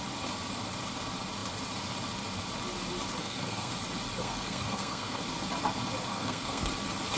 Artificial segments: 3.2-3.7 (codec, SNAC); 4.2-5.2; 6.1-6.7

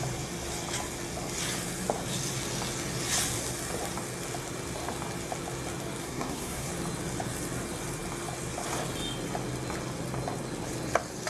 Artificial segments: 6.0-6.7 (codec, SNAC)

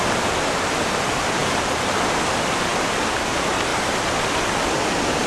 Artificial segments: none

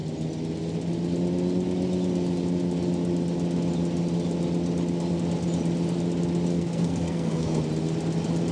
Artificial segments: 6.5-7.6 (codec, SNAC)

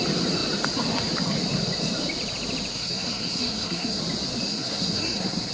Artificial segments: 2.7-4.0 (codec, SNAC); 4.5-5.5

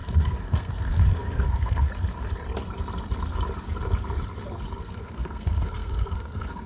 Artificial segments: 0.0-1.9 (codec, SNAC); 4.8-6.7